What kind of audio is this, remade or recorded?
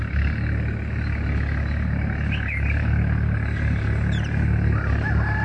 recorded